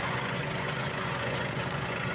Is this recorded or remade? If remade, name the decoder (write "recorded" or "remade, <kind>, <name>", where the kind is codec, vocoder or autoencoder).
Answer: remade, vocoder, Vocos